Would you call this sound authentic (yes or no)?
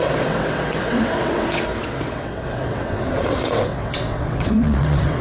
no